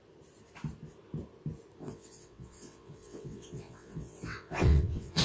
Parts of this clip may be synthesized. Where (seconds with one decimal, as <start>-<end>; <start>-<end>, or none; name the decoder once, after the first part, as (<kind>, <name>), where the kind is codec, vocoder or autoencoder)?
1.8-5.2 (vocoder, WaveNeXt)